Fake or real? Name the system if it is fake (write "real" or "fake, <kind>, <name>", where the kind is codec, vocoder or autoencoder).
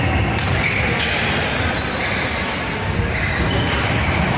real